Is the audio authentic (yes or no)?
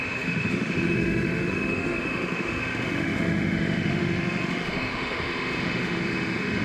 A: no